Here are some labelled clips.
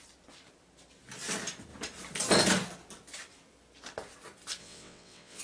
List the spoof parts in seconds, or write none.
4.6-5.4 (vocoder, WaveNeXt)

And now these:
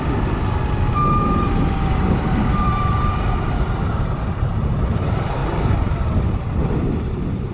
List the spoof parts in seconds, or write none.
1.9-4.5 (vocoder, BigVGAN v2); 5.4-7.5